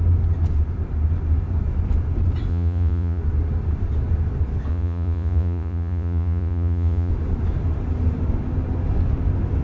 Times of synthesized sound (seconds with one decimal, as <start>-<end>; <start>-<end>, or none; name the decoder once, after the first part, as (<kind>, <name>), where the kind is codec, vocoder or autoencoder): 2.5-3.2 (vocoder, Vocos); 4.7-7.1